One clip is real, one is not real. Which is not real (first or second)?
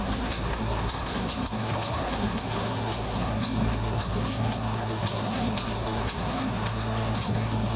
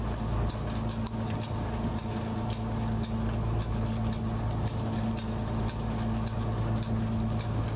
first